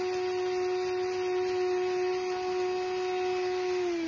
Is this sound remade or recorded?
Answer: recorded